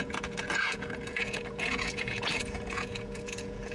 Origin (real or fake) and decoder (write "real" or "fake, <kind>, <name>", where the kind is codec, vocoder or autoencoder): fake, vocoder, Vocos